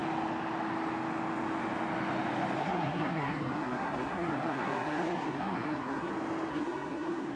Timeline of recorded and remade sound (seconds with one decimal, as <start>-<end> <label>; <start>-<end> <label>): 0.0-2.6 recorded; 2.6-6.1 remade; 6.1-6.5 recorded; 6.5-7.4 remade